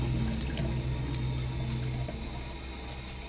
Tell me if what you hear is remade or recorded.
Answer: recorded